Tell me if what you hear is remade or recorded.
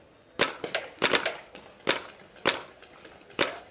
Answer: recorded